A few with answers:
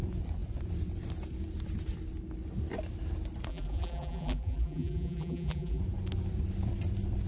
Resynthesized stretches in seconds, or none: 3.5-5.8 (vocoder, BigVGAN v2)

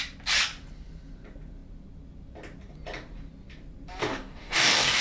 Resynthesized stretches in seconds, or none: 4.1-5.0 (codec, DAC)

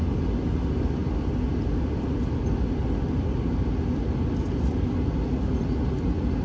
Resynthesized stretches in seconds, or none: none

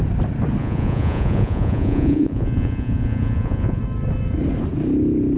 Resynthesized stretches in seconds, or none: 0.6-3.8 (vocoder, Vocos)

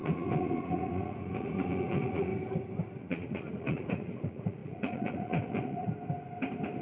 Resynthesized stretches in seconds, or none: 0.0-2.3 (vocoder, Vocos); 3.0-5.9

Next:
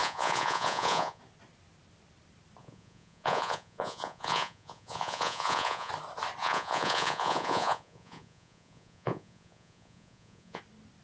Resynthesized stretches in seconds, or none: 0.0-1.2 (vocoder, Vocos); 2.6-5.9; 6.4-10.6